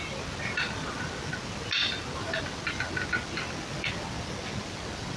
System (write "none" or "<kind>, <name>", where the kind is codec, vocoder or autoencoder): none